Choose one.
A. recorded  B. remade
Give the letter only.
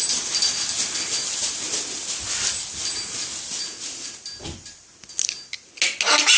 A